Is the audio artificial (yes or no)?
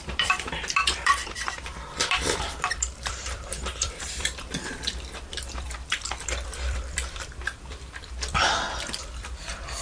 yes